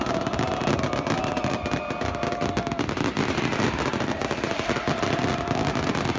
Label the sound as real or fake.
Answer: real